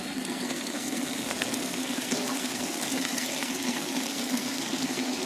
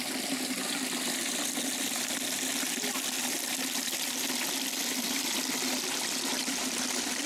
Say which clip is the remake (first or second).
first